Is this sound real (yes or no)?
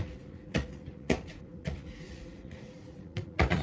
no